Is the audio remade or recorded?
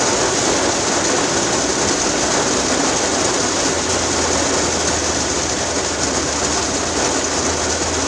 recorded